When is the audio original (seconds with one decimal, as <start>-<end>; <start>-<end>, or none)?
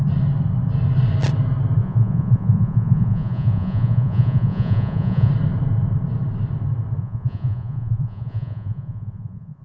0.0-1.8; 5.3-7.0